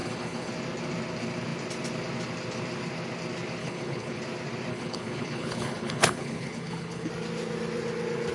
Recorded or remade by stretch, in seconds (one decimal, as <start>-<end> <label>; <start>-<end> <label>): 0.0-0.5 remade; 0.5-3.6 recorded; 3.6-4.2 remade; 4.2-4.7 recorded; 4.7-7.1 remade; 7.1-8.3 recorded